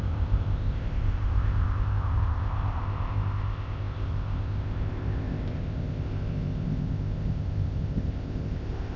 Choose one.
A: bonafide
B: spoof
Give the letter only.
B